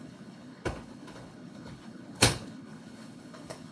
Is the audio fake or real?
fake